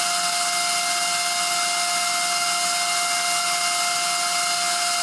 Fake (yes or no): no